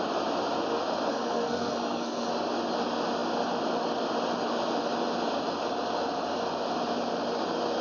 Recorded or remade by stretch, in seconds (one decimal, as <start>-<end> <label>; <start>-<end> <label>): 0.0-1.1 recorded; 1.1-2.3 remade; 2.3-7.8 recorded